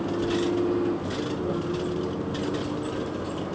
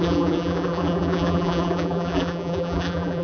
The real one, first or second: first